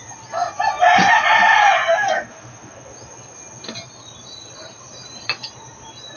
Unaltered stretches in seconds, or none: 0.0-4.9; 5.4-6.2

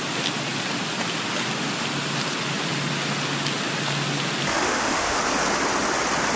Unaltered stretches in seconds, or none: 0.0-4.5; 5.2-6.4

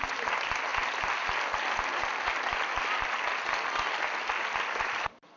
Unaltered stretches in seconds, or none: 0.0-5.4

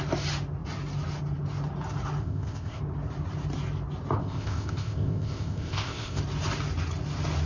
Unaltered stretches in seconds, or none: 0.0-2.2; 2.8-4.2; 6.2-7.5